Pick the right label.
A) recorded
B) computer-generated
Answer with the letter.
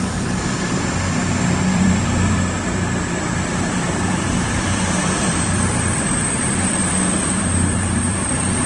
B